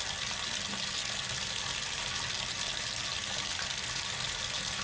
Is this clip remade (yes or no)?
no